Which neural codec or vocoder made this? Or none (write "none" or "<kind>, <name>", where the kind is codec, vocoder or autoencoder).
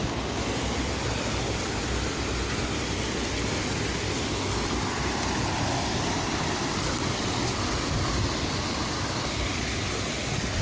none